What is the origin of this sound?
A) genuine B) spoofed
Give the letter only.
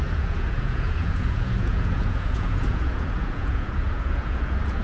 B